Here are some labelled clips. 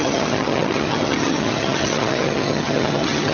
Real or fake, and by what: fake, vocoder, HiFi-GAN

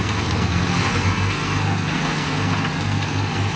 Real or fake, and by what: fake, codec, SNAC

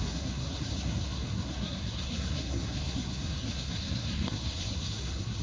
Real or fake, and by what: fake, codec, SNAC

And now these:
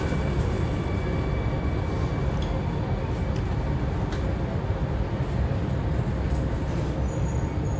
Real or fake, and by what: real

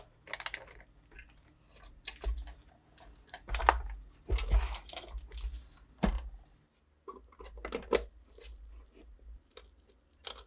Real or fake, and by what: real